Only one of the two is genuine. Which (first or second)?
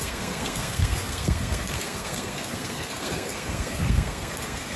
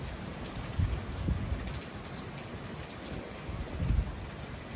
second